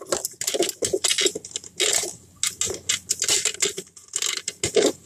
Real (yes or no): yes